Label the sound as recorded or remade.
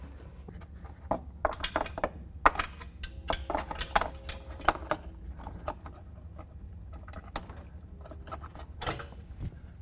recorded